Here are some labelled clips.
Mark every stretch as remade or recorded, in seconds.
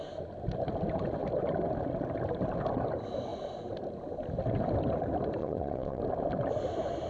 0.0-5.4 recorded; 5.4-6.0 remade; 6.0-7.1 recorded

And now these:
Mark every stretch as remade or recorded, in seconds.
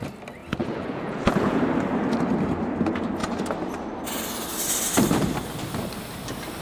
0.0-0.4 recorded; 0.4-1.6 remade; 1.6-6.6 recorded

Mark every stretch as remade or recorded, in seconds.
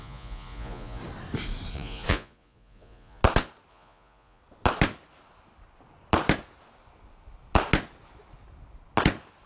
0.0-1.0 remade; 1.0-1.7 recorded; 1.7-3.2 remade; 3.2-3.7 recorded; 3.7-4.4 remade; 4.4-9.5 recorded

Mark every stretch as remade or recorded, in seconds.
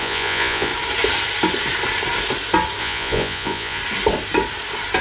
0.0-0.7 remade; 0.7-2.8 recorded; 2.8-3.8 remade; 3.8-5.0 recorded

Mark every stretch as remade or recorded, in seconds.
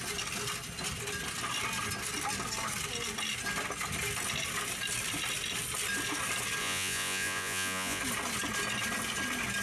0.0-6.6 recorded; 6.6-8.0 remade; 8.0-9.6 recorded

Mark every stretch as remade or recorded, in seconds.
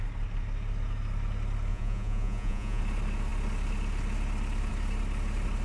0.0-1.7 recorded; 1.7-2.8 remade; 2.8-5.6 recorded